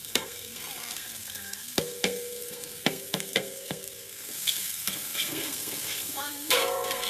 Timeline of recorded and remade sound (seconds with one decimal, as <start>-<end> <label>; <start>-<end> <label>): 0.0-7.1 remade